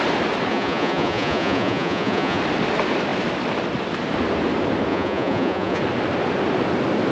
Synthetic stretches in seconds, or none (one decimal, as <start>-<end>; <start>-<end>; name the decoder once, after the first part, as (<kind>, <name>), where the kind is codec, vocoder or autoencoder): 0.5-2.4 (vocoder, Vocos); 4.9-5.8